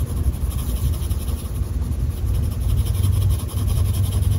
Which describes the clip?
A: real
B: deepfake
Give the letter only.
A